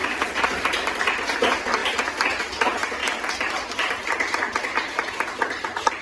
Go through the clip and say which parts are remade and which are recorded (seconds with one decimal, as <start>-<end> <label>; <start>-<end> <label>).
0.0-1.8 remade; 1.8-2.4 recorded; 2.4-3.0 remade; 3.0-3.9 recorded; 3.9-6.0 remade